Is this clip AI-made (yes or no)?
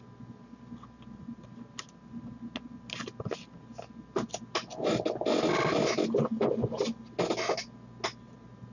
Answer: no